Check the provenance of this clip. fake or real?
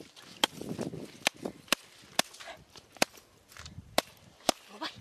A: real